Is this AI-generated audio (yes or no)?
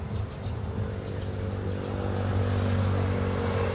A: no